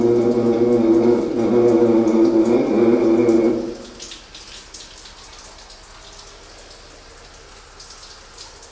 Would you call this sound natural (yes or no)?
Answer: yes